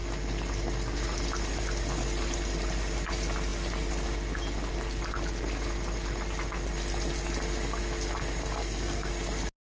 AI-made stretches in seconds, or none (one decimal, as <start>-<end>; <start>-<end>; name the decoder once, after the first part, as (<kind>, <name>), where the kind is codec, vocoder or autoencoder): 8.6-9.1 (codec, SNAC)

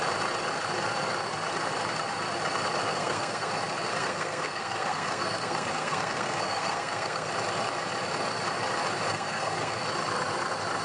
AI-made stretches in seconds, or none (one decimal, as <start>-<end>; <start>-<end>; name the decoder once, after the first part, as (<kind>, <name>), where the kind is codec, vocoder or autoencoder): 2.9-3.5 (codec, SNAC); 3.9-7.3; 9.1-9.8

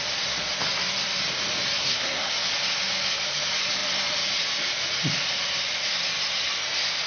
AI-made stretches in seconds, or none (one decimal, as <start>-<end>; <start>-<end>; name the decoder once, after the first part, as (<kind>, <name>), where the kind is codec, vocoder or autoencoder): 1.8-2.3 (codec, SNAC)

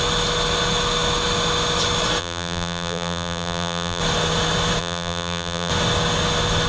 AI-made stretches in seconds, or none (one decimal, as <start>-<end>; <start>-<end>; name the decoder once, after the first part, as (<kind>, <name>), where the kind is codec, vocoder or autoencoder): 2.2-4.0 (vocoder, BigVGAN v2); 4.8-5.7

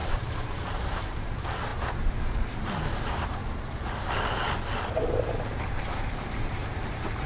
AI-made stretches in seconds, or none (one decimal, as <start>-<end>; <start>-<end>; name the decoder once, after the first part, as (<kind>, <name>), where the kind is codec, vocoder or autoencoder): 0.0-3.4 (vocoder, BigVGAN v2); 5.8-7.3